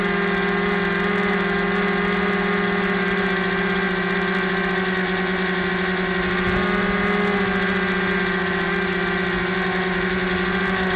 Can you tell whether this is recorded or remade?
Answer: recorded